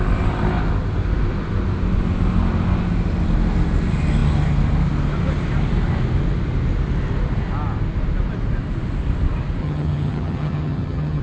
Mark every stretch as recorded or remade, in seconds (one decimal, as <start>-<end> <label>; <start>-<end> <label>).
0.0-9.6 recorded; 9.6-11.2 remade